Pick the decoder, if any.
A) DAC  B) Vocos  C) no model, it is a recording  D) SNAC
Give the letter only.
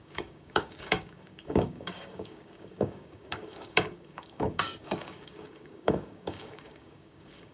A